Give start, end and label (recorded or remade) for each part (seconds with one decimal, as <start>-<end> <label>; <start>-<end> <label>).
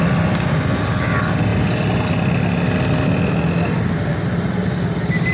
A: 0.0-5.3 recorded